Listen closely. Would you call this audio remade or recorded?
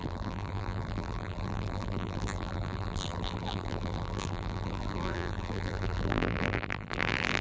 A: remade